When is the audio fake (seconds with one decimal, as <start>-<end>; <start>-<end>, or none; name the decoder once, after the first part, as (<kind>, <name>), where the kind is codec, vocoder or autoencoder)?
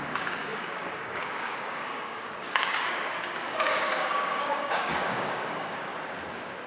0.0-5.9 (codec, DAC)